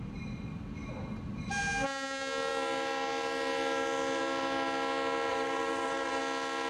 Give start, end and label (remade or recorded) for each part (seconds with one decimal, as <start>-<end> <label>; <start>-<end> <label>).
0.0-5.3 recorded; 5.3-6.2 remade; 6.2-6.7 recorded